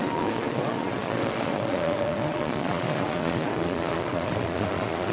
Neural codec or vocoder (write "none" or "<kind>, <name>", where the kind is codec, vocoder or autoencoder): vocoder, Vocos